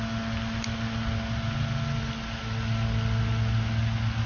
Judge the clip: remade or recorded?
recorded